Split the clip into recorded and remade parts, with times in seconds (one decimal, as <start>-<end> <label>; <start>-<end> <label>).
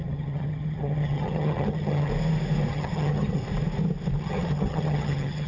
0.0-2.1 remade; 2.1-2.7 recorded; 2.7-3.4 remade; 3.4-4.2 recorded; 4.2-5.5 remade